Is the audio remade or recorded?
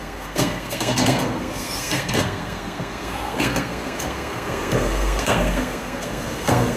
remade